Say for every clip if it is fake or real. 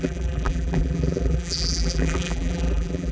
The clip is fake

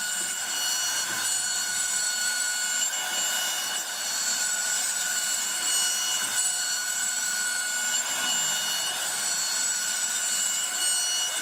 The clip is real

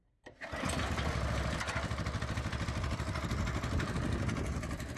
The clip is real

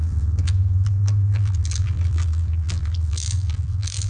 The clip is fake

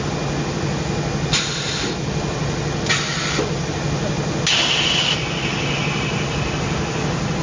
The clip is real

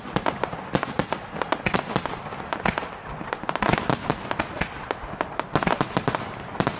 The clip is real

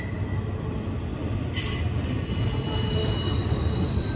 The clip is real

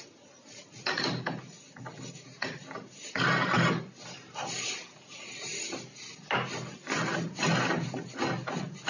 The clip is real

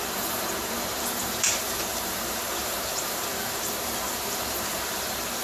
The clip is fake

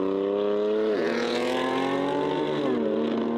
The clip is real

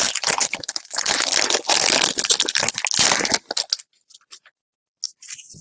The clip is fake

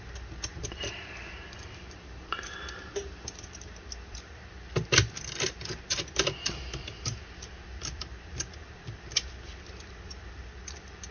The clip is fake